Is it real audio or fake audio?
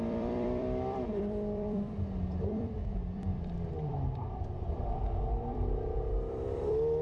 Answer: fake